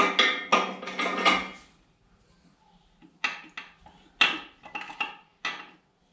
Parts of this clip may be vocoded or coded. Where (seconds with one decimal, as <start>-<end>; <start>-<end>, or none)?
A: none

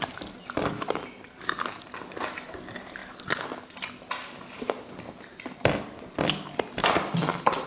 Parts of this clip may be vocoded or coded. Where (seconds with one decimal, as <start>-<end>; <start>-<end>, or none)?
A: none

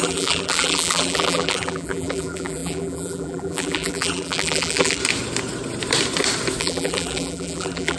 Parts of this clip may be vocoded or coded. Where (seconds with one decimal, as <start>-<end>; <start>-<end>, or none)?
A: 0.0-5.0; 6.6-8.0

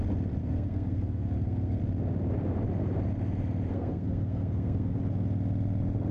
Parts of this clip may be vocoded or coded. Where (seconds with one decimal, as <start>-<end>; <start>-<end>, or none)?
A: 0.4-1.8; 3.7-5.0

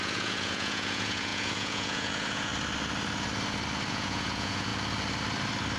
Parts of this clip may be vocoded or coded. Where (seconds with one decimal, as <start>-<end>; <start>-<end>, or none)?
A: 0.0-2.5; 3.9-4.7

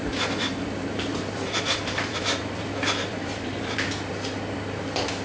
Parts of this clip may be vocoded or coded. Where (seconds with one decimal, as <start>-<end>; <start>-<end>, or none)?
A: 0.0-0.5; 1.1-4.1

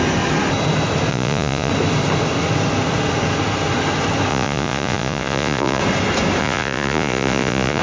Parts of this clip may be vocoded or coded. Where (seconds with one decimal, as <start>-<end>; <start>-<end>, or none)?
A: 1.1-1.7; 4.3-5.8; 6.4-7.8